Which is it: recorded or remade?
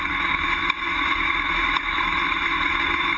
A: remade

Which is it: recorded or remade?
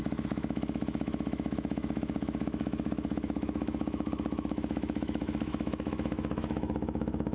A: remade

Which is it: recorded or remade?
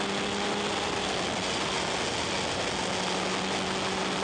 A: recorded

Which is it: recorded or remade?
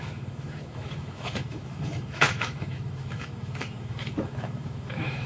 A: remade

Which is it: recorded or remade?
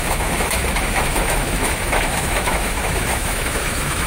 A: remade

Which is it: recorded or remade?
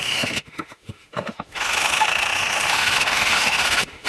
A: remade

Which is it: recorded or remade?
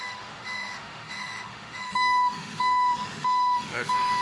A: remade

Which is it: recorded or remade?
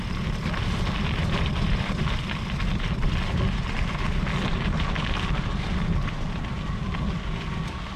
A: recorded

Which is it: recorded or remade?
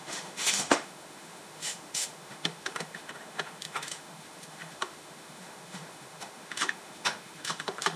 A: remade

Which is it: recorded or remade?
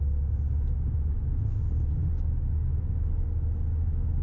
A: recorded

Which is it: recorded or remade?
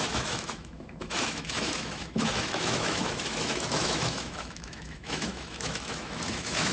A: remade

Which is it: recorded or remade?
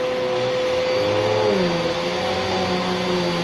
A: recorded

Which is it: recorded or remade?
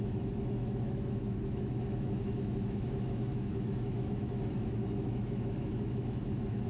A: remade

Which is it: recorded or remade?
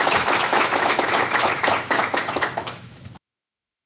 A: remade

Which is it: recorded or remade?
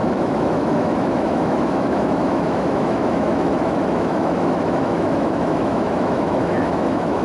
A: remade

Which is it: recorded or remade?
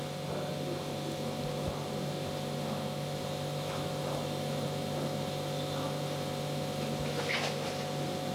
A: recorded